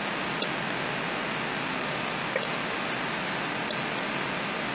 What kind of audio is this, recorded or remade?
recorded